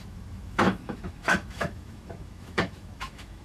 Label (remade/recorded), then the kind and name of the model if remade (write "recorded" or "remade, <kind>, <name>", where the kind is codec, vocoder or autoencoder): remade, autoencoder, DAC-VAE